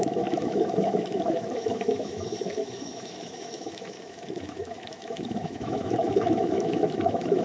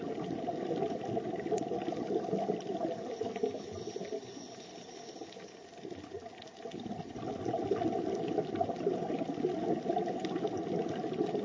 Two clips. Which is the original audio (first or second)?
second